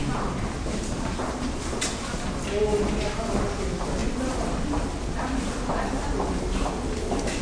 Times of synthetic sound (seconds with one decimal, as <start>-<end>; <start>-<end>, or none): none

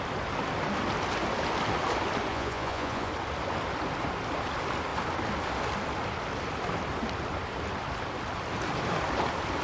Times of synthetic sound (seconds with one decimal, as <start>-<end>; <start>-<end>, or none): 2.3-3.1

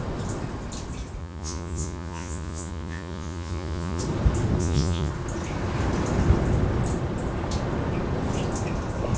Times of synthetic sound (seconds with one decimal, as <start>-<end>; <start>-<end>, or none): 1.2-4.0; 4.6-5.1

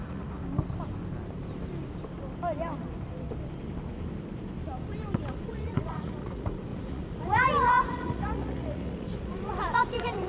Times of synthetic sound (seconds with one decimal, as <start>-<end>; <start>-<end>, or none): 0.0-0.4; 5.3-10.3

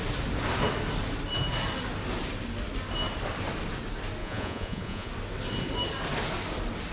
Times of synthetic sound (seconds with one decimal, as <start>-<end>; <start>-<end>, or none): 4.2-5.1

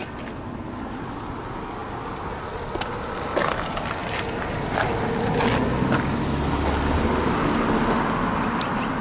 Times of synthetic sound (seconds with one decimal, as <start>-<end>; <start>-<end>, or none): none

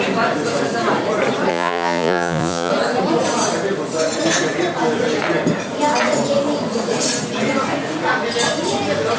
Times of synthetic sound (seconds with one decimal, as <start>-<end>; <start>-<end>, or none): 1.5-2.7

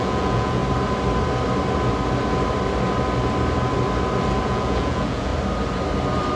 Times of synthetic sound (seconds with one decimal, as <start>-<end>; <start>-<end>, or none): 0.0-0.6; 4.4-5.3